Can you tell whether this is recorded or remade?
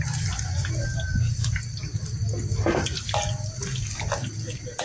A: recorded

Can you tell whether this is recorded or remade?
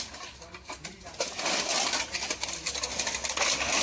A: recorded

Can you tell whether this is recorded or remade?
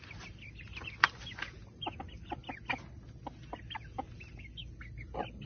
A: recorded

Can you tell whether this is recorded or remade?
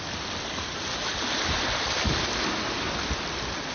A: recorded